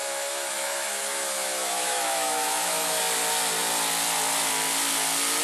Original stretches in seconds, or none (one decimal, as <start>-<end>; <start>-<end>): 3.0-5.4